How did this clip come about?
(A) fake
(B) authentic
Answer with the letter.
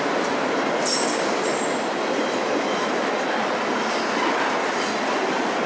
B